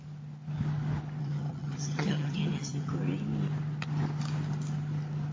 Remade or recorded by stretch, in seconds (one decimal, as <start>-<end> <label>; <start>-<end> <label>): 0.0-1.2 recorded; 1.2-2.9 remade; 2.9-5.3 recorded